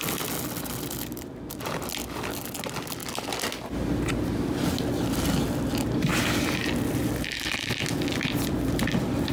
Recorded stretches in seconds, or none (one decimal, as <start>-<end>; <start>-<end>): 0.0-9.3